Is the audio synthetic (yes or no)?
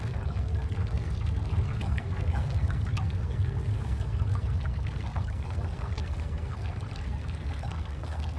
yes